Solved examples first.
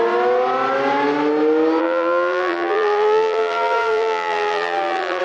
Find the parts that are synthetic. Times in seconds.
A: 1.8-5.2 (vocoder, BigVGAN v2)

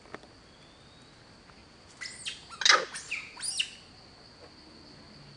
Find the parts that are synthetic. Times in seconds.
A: none

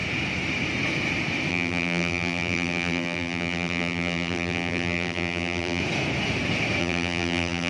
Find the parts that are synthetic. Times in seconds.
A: 1.5-5.8 (vocoder, BigVGAN v2); 6.8-7.7

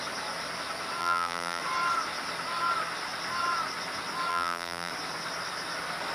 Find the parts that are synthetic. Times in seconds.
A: 1.0-1.6 (vocoder, BigVGAN v2); 4.3-4.9

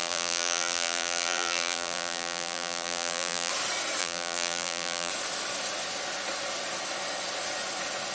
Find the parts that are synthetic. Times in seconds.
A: 0.0-3.5 (vocoder, BigVGAN v2); 4.0-5.1